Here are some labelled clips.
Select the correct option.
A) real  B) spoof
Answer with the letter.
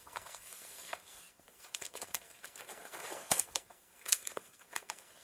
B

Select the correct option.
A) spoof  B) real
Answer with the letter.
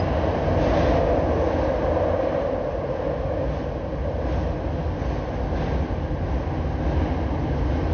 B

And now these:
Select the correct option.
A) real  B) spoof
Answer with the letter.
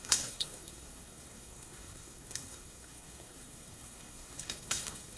B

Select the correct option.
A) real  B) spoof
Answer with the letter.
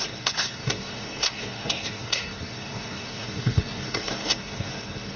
B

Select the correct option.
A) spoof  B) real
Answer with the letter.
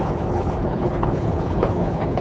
A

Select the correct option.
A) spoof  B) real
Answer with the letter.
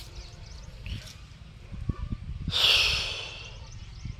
A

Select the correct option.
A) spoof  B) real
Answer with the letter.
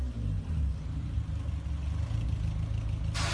B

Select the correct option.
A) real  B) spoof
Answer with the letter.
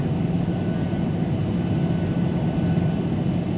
A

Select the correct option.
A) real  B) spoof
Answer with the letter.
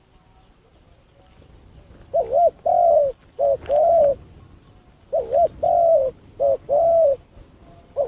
A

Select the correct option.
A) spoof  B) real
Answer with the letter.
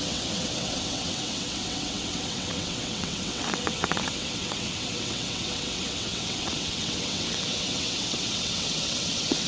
A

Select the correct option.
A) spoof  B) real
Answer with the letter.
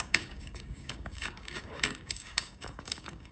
A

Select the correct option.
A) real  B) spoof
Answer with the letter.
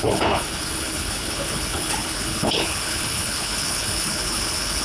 B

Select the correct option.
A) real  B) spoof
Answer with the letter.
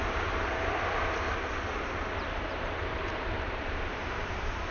A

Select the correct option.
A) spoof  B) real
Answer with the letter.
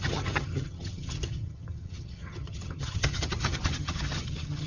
A